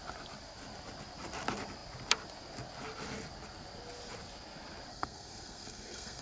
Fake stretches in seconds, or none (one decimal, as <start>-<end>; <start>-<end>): 4.9-6.2